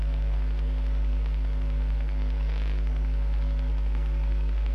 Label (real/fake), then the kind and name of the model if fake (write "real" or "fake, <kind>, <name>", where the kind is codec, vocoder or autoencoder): fake, codec, SNAC